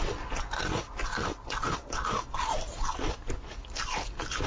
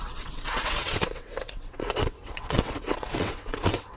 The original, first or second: first